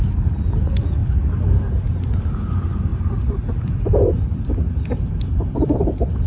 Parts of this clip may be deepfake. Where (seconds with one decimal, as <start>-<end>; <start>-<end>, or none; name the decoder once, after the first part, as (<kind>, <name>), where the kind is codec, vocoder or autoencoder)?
none